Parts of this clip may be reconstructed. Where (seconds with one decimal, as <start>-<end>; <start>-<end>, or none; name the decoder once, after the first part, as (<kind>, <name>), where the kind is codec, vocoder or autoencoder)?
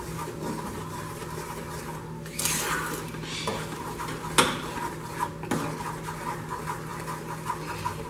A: none